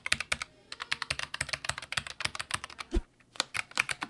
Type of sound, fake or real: real